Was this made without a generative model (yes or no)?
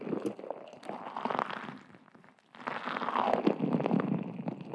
yes